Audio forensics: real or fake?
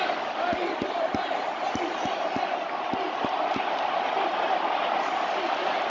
real